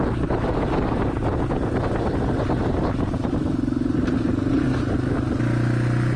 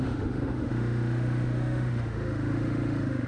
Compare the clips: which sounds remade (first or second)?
second